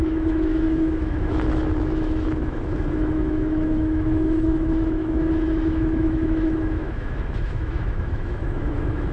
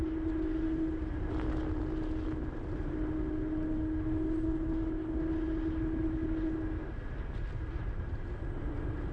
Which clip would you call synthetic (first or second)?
first